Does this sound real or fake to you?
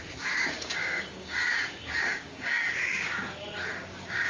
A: fake